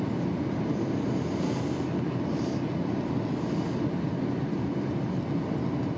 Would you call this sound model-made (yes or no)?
no